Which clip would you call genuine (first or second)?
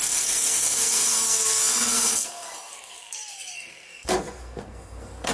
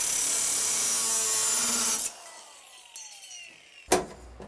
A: second